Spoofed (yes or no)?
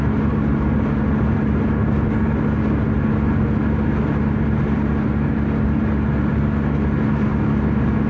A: no